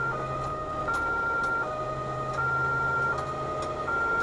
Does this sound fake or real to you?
real